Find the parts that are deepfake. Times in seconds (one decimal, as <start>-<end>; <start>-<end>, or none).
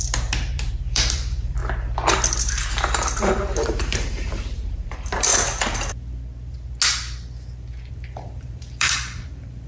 0.0-1.6; 2.4-5.3; 7.9-9.7